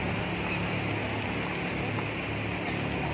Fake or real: real